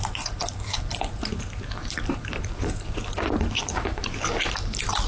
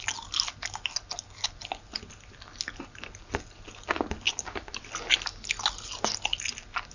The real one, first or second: second